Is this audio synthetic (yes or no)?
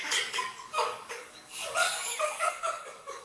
yes